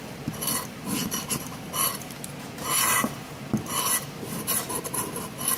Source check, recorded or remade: recorded